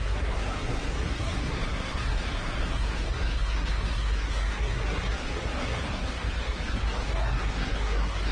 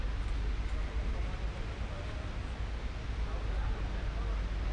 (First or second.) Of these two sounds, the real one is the second